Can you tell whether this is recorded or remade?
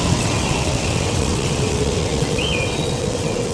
remade